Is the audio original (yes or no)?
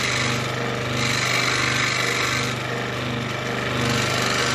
yes